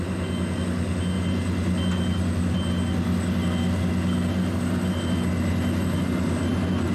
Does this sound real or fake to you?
real